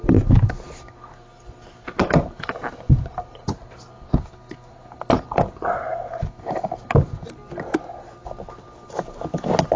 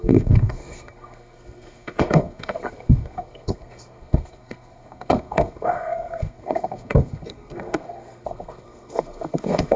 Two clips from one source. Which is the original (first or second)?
first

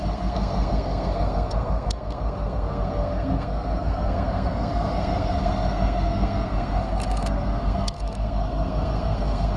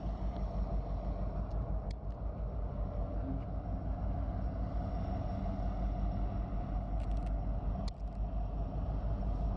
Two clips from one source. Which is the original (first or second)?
second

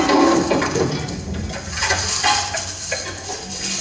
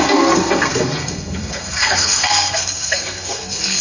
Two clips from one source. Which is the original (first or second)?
first